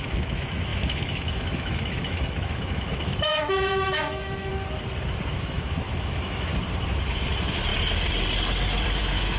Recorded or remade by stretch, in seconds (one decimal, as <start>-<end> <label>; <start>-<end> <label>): 0.0-4.5 remade; 4.5-5.3 recorded; 5.3-6.5 remade; 6.5-7.1 recorded; 7.1-7.7 remade; 7.7-9.0 recorded; 9.0-9.4 remade

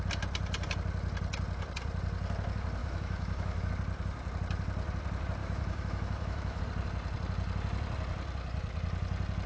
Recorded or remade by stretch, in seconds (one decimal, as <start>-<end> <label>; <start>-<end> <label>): 0.0-2.8 recorded; 2.8-3.7 remade; 3.7-5.4 recorded; 5.4-6.6 remade; 6.6-9.5 recorded

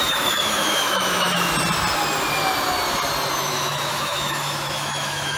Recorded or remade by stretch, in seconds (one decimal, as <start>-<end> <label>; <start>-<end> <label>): 0.0-1.5 remade; 1.5-3.4 recorded; 3.4-5.4 remade

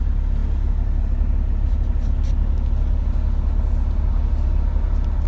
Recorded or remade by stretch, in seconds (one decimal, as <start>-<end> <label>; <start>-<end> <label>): 0.0-5.3 recorded

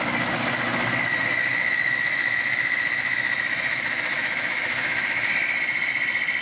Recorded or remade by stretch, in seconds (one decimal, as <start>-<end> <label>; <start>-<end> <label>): 0.0-1.5 recorded; 1.5-5.3 remade; 5.3-6.4 recorded

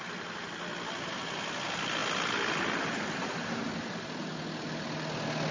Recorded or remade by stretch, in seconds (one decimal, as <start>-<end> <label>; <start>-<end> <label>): 0.0-5.5 recorded

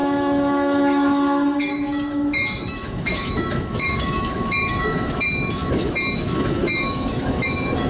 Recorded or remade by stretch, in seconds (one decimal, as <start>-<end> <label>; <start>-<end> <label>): 0.0-7.9 remade

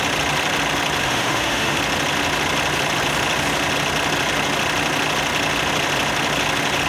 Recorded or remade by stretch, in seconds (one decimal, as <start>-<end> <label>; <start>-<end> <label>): 0.0-1.0 recorded; 1.0-1.8 remade; 1.8-6.9 recorded